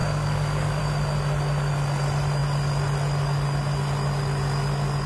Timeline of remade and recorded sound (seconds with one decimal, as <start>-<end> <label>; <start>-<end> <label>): 0.0-0.8 remade; 0.8-5.1 recorded